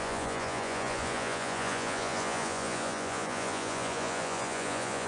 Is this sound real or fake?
fake